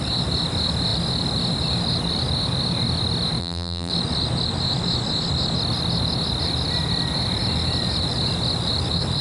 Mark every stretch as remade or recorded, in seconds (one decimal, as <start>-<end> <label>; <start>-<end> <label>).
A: 0.0-3.4 recorded; 3.4-3.9 remade; 3.9-9.2 recorded